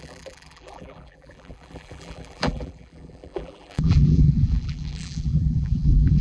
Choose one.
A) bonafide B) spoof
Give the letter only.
B